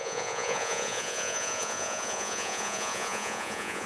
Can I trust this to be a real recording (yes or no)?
no